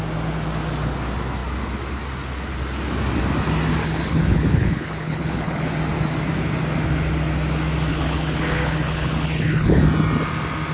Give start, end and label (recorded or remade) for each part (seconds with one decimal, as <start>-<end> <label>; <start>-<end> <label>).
0.0-3.8 recorded; 3.8-5.7 remade; 5.7-7.9 recorded; 7.9-9.8 remade; 9.8-10.7 recorded